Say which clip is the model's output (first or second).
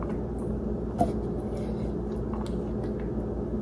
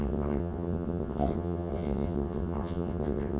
second